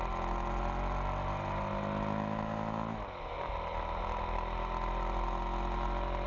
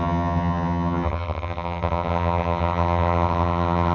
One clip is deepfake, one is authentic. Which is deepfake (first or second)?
second